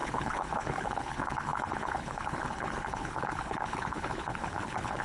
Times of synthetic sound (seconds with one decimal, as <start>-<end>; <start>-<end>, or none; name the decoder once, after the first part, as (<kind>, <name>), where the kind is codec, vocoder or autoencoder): 0.0-5.0 (codec, HILCodec)